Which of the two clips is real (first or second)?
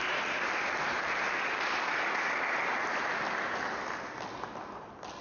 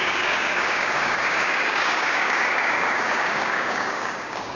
first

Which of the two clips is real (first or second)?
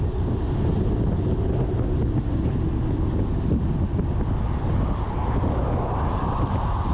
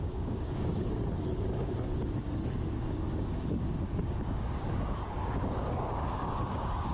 first